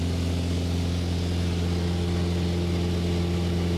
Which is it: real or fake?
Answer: real